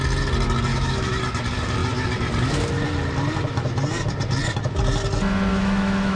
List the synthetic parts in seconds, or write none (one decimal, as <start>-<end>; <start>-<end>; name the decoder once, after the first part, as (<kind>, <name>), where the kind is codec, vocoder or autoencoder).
0.7-1.2 (autoencoder, DAC-VAE); 5.5-6.2